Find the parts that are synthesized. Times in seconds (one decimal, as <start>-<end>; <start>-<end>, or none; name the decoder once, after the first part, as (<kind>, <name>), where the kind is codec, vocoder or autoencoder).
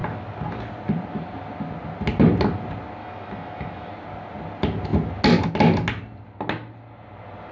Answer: 3.0-3.9 (autoencoder, DAC-VAE)